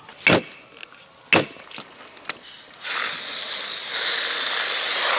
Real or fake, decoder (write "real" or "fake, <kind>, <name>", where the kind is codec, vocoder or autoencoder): real